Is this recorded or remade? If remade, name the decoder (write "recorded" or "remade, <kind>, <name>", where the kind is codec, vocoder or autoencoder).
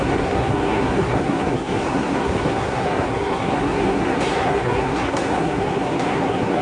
remade, codec, SNAC